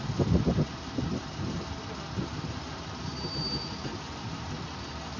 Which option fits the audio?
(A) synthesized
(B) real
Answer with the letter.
B